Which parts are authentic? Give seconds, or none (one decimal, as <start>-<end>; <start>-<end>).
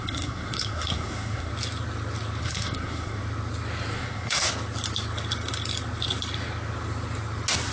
1.5-2.4; 3.2-3.9; 4.5-7.7